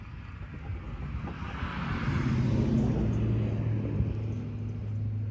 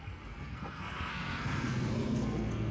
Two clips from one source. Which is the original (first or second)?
first